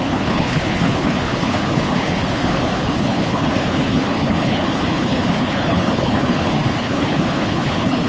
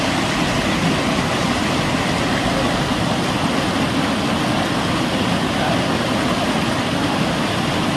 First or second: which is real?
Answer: second